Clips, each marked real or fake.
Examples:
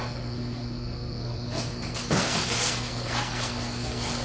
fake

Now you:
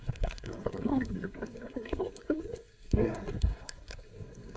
fake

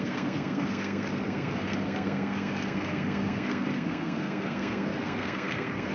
fake